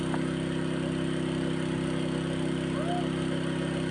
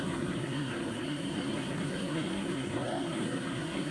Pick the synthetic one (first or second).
second